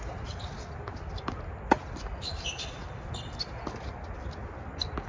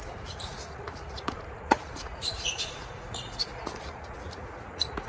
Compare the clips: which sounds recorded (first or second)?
first